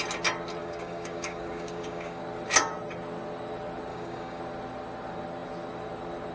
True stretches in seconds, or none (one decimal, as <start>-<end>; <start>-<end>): 0.0-0.6; 2.2-3.9; 4.4-6.3